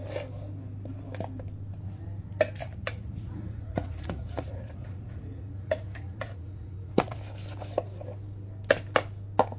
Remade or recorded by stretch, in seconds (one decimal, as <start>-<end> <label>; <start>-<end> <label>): 0.0-2.6 recorded; 2.6-7.2 remade; 7.2-9.6 recorded